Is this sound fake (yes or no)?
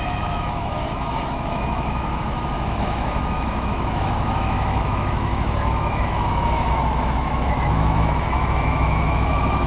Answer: yes